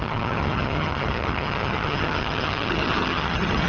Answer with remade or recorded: remade